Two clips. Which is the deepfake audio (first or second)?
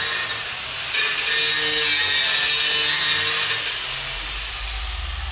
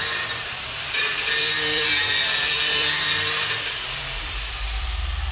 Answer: second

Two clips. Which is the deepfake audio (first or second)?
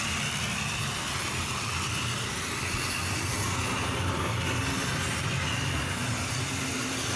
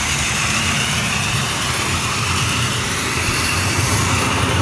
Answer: second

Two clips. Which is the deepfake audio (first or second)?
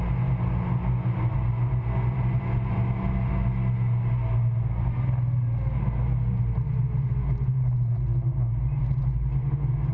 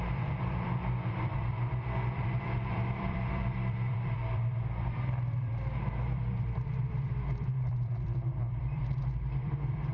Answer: second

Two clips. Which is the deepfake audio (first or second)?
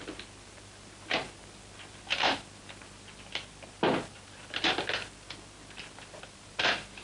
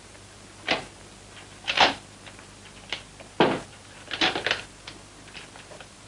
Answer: first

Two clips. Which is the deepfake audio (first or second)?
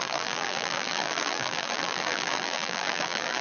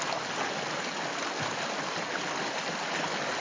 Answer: first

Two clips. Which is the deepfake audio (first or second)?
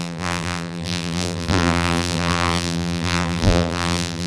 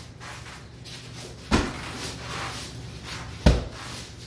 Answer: first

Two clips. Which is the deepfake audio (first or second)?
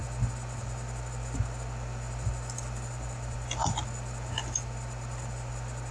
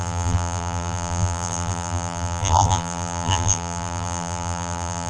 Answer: second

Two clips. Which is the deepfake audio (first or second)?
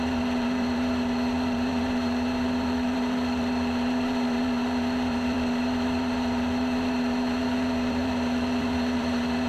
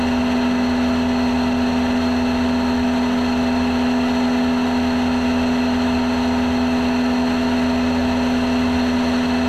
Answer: first